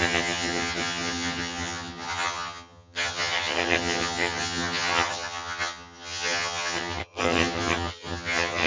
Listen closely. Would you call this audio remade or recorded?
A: remade